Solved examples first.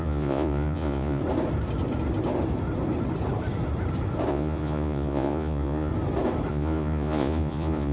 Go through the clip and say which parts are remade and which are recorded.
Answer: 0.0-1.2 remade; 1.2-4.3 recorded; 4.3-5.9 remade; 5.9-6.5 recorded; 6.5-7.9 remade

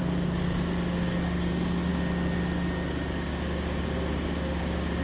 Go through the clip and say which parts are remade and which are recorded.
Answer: 0.0-5.0 recorded

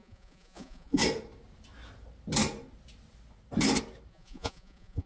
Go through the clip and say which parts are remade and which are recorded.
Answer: 0.0-1.0 remade; 1.0-4.1 recorded; 4.1-5.1 remade

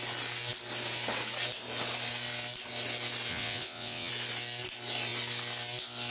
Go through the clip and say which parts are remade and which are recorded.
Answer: 0.0-3.3 recorded; 3.3-4.1 remade; 4.1-6.1 recorded

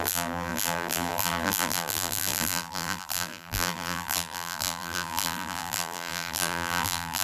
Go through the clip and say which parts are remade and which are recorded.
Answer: 0.0-7.2 remade

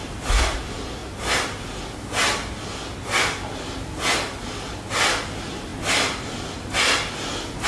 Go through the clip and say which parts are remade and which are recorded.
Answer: 0.0-7.7 recorded